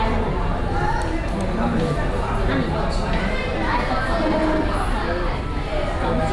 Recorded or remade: recorded